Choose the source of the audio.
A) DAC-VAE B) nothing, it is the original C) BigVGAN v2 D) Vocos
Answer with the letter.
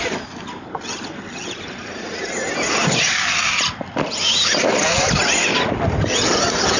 B